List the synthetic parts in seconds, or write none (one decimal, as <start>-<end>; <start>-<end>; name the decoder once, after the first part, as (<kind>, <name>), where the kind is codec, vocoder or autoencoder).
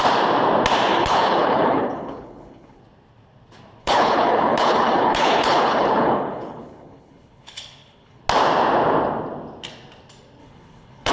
0.9-2.8 (codec, HILCodec); 3.8-8.2; 10.4-11.1